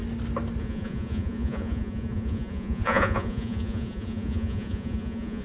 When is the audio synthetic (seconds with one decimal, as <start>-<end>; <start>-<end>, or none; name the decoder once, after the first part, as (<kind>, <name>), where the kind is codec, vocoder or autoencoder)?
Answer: 0.6-5.4 (vocoder, Vocos)